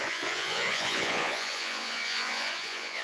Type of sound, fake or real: fake